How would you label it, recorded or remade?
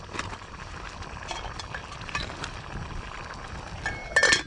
recorded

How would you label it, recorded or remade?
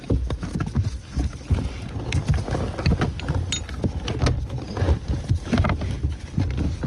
recorded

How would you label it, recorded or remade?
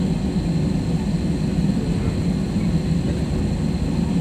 recorded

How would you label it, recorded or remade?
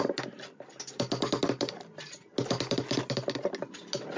recorded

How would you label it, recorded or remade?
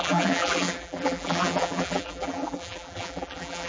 remade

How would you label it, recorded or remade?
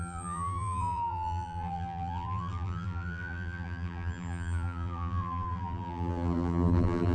remade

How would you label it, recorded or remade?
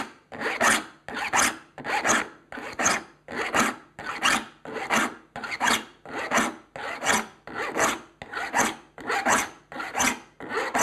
recorded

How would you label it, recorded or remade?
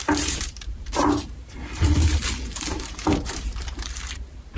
remade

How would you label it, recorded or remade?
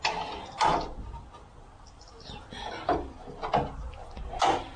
recorded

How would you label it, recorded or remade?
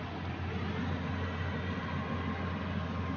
recorded